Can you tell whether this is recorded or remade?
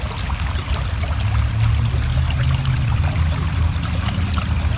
recorded